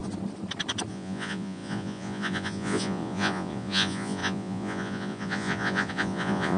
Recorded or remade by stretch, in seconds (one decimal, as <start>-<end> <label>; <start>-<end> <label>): 0.0-0.9 recorded; 0.9-6.6 remade